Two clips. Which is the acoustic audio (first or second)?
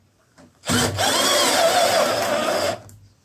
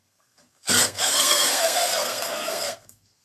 first